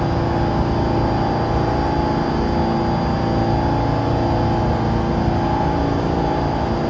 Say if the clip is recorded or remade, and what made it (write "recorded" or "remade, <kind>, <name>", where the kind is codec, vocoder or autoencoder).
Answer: recorded